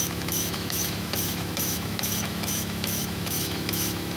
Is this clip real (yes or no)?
no